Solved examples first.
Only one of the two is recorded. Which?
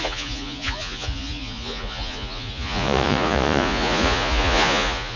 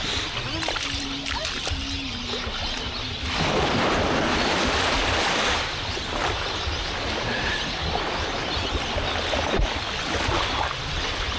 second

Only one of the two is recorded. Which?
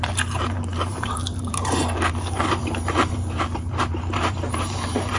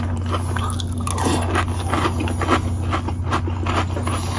second